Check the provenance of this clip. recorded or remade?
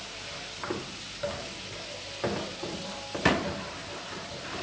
recorded